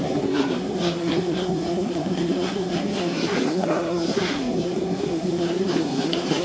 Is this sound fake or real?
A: fake